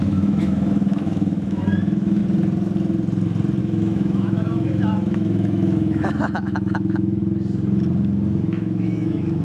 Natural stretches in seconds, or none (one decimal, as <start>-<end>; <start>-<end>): 2.2-3.6; 7.2-8.4